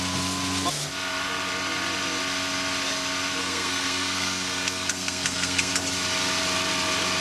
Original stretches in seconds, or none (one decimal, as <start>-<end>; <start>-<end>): 0.0-3.4; 5.7-7.2